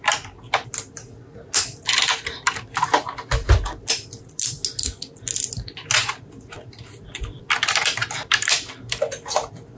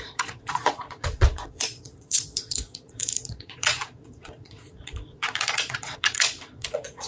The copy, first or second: second